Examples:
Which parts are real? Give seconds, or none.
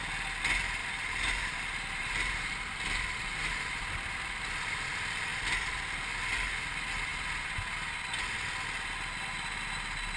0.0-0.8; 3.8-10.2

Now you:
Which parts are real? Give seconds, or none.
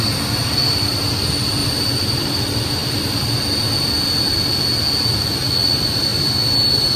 0.0-1.6; 2.4-7.0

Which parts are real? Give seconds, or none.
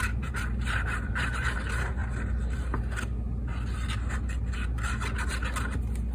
1.4-6.1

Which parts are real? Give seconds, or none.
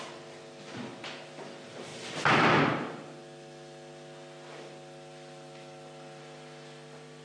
0.0-7.2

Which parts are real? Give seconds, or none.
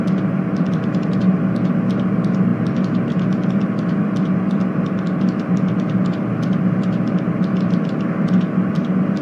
0.0-9.2